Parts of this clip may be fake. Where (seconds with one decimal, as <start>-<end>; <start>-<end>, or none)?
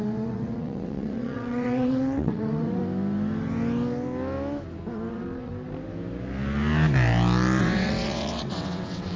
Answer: 0.0-2.8; 5.1-5.5; 7.6-9.2